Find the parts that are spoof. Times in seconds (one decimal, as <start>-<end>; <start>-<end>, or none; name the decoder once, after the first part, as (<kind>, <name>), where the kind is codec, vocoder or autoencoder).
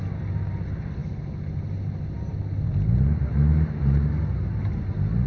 none